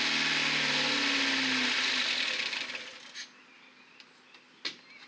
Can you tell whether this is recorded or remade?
recorded